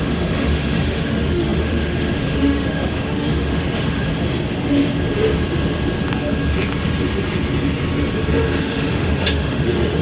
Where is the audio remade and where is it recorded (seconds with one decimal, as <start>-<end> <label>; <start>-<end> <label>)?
0.0-4.1 remade; 4.1-8.6 recorded; 8.6-10.0 remade